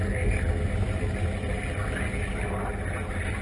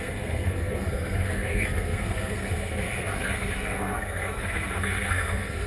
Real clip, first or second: first